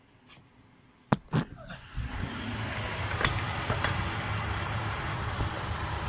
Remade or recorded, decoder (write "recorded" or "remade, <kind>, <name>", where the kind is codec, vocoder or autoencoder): recorded